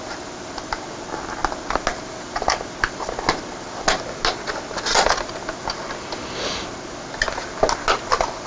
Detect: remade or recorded recorded